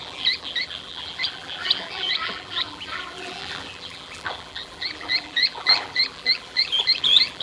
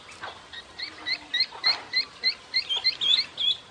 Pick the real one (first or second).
second